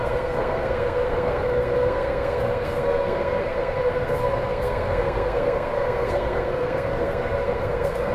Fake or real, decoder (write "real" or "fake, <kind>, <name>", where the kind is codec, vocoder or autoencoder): fake, codec, SNAC